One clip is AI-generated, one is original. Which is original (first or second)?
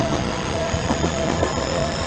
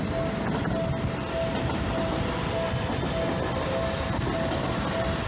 second